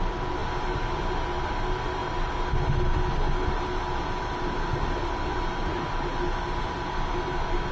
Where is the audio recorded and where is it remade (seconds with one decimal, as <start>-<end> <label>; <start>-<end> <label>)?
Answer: 0.0-7.7 recorded